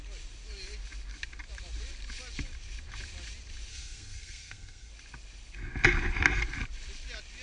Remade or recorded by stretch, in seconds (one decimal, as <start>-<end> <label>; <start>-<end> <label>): 0.0-3.7 recorded; 3.7-4.9 remade; 4.9-7.4 recorded